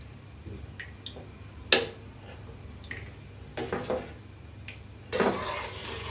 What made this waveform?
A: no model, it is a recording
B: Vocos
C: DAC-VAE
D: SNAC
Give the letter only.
A